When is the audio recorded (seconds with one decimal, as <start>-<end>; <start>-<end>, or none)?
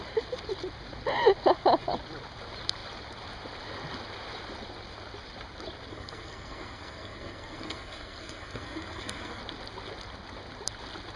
0.0-5.9; 9.4-11.2